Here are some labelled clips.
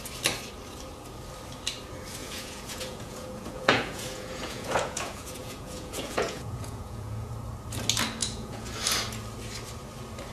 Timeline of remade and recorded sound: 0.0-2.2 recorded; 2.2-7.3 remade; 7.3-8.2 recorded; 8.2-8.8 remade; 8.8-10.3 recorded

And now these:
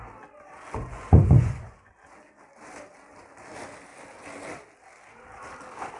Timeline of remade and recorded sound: 0.0-0.9 recorded; 0.9-1.9 remade; 1.9-6.0 recorded

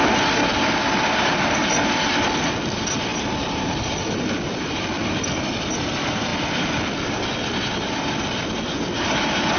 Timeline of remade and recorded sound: 0.0-9.6 recorded

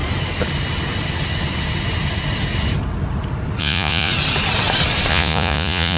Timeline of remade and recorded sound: 0.0-3.6 recorded; 3.6-4.1 remade; 4.1-5.1 recorded; 5.1-6.0 remade

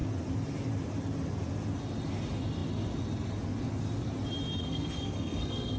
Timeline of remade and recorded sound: 0.0-4.6 recorded; 4.6-5.8 remade

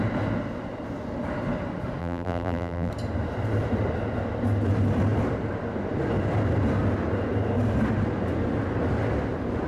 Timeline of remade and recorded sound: 0.0-2.0 recorded; 2.0-2.9 remade; 2.9-9.7 recorded

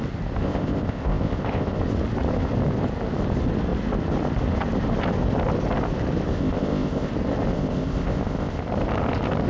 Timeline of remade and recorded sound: 0.0-0.4 recorded; 0.4-1.8 remade; 1.8-6.3 recorded; 6.3-7.1 remade; 7.1-7.5 recorded; 7.5-8.6 remade; 8.6-9.5 recorded

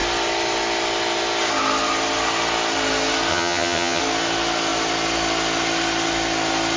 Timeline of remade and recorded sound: 0.0-3.3 recorded; 3.3-4.0 remade; 4.0-6.8 recorded